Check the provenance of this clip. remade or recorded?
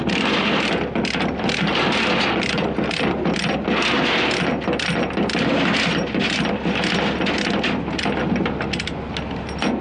recorded